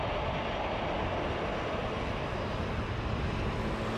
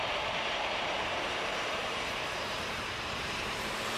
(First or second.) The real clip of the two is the first